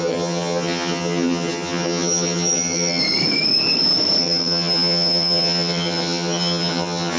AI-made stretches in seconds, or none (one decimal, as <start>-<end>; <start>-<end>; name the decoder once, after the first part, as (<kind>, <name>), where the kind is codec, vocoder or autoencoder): 0.0-3.0 (vocoder, HiFi-GAN); 4.2-7.2